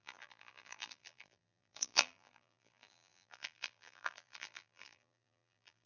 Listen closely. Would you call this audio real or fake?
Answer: fake